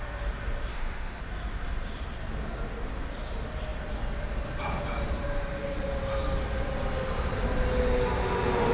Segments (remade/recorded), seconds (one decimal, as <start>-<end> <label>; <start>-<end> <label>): 0.0-0.7 recorded; 0.7-1.2 remade; 1.2-8.7 recorded